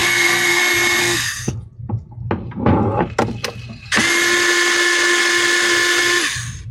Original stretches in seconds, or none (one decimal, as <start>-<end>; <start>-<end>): 0.6-1.0; 1.5-6.7